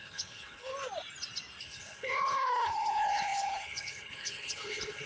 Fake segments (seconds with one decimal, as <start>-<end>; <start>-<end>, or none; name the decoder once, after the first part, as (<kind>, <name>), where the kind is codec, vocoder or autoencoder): 0.0-0.7 (codec, HILCodec); 1.6-5.1